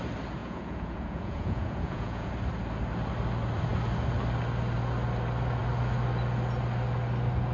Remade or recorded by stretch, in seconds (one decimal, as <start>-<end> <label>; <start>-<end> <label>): 0.0-0.4 recorded; 0.4-2.3 remade; 2.3-7.5 recorded